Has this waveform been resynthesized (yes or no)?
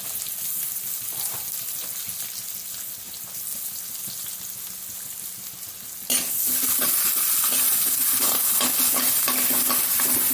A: no